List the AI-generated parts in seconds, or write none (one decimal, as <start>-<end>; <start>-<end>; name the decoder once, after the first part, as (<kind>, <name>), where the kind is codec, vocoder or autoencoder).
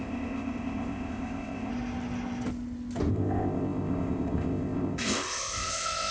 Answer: 0.0-1.7 (codec, ZipCodec); 3.1-6.1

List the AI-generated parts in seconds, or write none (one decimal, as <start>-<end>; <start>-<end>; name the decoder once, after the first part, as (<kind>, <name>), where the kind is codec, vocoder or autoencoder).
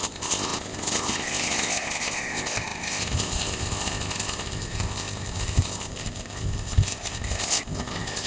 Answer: 0.0-8.3 (codec, ZipCodec)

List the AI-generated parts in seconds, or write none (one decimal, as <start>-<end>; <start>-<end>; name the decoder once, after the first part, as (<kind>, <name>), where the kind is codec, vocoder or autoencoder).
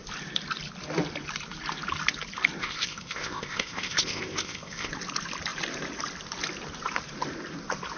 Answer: 2.6-4.9 (codec, ZipCodec)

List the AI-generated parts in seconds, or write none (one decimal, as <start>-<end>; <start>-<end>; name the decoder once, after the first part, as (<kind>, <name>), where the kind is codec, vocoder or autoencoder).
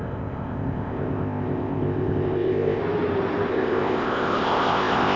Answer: 0.0-2.8 (codec, ZipCodec); 3.5-5.2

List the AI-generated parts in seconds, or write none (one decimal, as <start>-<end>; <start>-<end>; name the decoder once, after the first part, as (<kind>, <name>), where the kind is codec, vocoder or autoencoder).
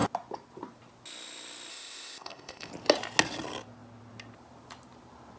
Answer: 1.7-2.7 (codec, ZipCodec)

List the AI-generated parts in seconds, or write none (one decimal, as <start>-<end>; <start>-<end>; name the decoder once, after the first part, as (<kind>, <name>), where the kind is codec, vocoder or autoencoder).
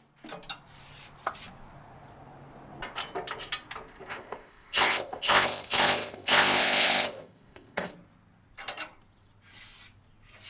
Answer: 4.1-7.9 (codec, ZipCodec)